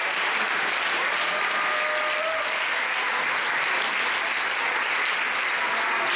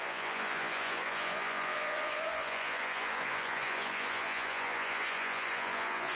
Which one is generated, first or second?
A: second